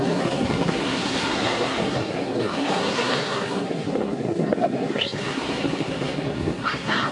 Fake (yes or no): yes